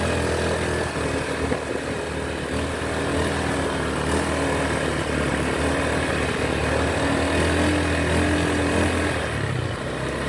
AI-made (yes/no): no